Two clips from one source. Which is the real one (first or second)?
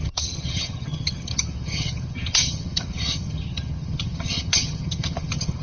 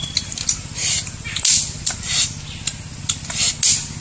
second